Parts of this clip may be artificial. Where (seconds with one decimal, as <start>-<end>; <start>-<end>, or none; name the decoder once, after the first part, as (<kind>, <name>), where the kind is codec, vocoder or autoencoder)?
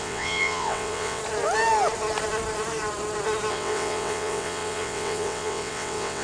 0.0-1.2 (vocoder, WaveNeXt); 3.5-6.2